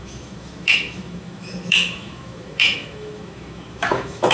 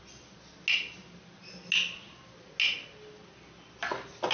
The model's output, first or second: first